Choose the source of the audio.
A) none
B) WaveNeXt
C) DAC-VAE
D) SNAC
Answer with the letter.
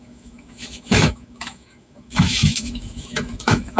C